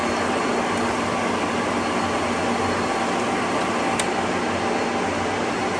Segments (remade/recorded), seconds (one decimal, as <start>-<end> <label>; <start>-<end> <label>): 0.0-5.8 recorded